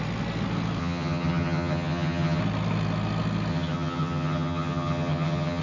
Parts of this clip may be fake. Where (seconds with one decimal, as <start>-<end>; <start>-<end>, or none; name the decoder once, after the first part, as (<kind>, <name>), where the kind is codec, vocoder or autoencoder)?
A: 0.8-2.4 (vocoder, HiFi-GAN); 3.5-5.6